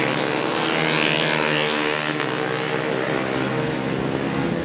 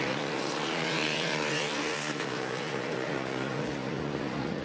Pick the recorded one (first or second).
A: first